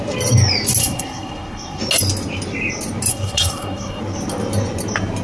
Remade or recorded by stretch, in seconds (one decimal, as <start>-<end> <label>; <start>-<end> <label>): 0.0-0.8 recorded; 0.8-1.8 remade; 1.8-3.1 recorded; 3.1-4.0 remade; 4.0-5.2 recorded